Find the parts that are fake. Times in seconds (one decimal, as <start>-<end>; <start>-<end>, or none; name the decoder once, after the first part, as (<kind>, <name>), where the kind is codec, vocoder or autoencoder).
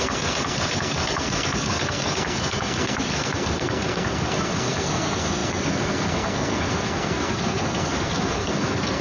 0.0-9.0 (codec, SNAC)